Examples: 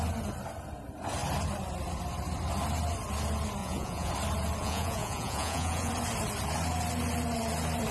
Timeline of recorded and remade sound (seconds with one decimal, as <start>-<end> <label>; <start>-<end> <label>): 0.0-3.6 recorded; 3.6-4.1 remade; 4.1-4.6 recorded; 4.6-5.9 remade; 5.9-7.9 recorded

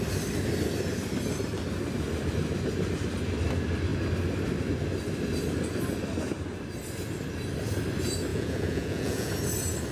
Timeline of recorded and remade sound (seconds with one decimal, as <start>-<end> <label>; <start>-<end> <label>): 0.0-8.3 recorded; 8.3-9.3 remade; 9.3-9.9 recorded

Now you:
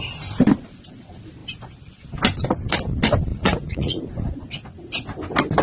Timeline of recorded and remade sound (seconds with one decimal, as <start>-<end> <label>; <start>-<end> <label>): 0.0-3.3 recorded; 3.3-4.0 remade; 4.0-5.6 recorded

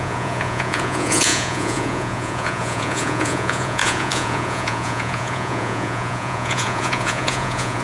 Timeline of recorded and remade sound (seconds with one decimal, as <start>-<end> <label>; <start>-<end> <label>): 0.0-7.8 remade